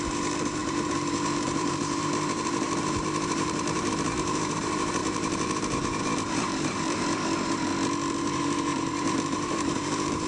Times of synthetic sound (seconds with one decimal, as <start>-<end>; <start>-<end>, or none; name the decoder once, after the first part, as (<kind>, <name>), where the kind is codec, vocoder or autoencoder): 0.0-7.7 (vocoder, BigVGAN v2); 8.2-10.3